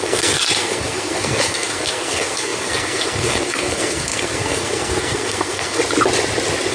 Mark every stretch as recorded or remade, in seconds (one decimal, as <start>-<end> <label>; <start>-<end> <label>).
0.0-5.8 remade; 5.8-6.7 recorded